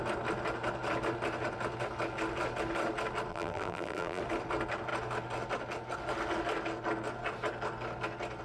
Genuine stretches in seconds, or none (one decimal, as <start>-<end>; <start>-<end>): 0.0-3.3; 4.2-8.4